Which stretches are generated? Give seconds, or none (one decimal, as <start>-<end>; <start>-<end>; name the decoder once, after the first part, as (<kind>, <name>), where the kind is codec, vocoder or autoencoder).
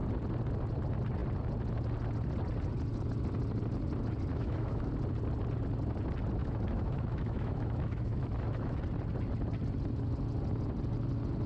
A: 4.3-4.9 (autoencoder, DAC-VAE); 6.4-8.8